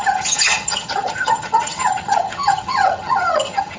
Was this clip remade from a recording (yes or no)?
yes